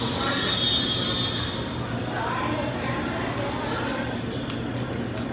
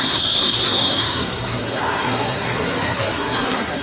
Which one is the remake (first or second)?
second